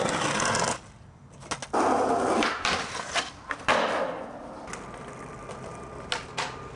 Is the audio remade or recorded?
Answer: recorded